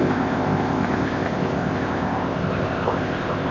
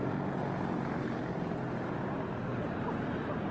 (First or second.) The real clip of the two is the second